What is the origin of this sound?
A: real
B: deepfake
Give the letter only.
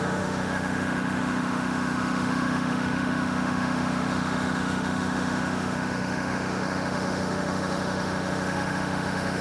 B